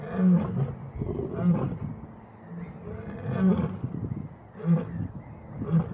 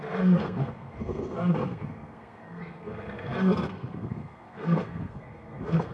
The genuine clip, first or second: first